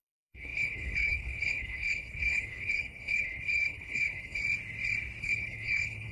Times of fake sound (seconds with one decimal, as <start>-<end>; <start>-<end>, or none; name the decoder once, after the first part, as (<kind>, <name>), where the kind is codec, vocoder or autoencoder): 0.0-4.4 (codec, HILCodec); 5.2-6.1